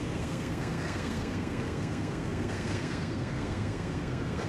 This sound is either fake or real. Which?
fake